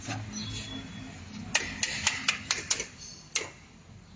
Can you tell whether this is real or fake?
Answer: real